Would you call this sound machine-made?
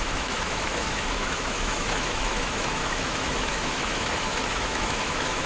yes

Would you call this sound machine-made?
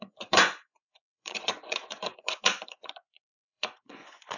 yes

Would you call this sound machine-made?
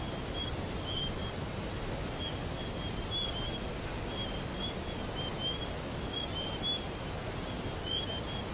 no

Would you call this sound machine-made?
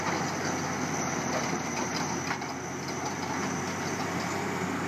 no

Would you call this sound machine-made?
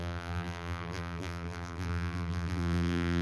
yes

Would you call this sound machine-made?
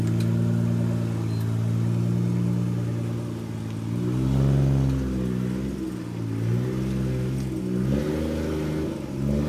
no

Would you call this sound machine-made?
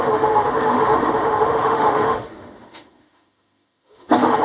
yes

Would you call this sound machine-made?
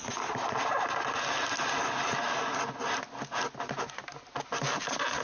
no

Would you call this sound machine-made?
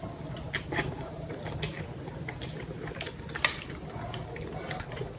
no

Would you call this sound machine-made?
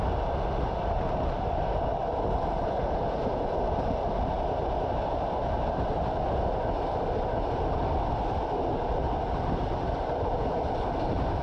no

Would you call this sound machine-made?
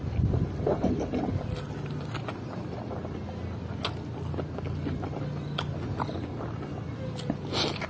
no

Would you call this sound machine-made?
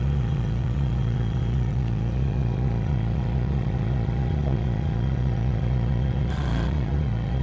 yes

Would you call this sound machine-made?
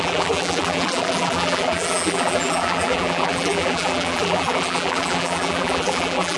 yes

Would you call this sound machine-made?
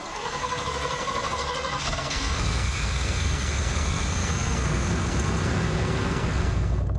yes